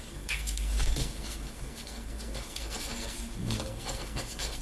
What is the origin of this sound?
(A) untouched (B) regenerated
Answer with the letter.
B